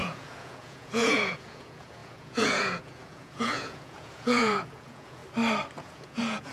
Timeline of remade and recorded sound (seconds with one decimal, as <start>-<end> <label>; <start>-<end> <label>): 0.0-5.2 remade; 5.2-5.8 recorded; 5.8-6.5 remade